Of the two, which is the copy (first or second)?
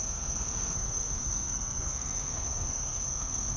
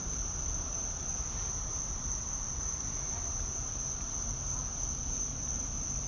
first